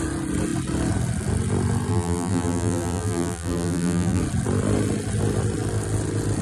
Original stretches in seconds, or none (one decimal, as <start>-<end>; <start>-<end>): 0.0-1.9; 4.2-6.4